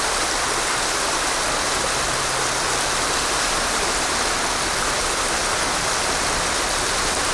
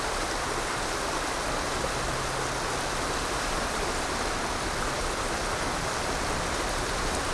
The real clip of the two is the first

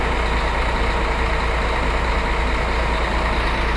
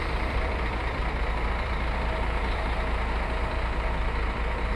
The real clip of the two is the first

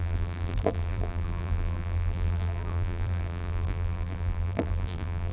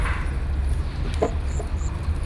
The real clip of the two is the second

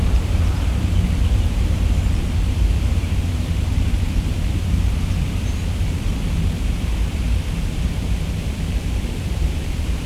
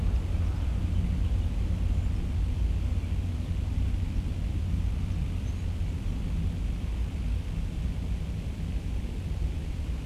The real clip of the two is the second